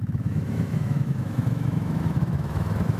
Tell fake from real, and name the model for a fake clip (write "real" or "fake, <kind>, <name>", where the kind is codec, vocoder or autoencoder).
fake, autoencoder, DAC-VAE